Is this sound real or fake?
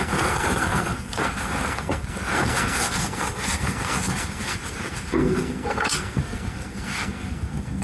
fake